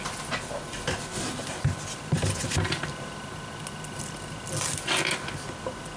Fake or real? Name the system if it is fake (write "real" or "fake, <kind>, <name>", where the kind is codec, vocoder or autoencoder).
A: real